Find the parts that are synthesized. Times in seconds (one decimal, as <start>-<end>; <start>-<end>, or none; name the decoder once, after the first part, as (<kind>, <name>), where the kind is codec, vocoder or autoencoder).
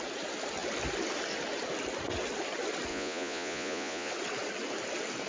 2.9-4.1 (vocoder, Vocos)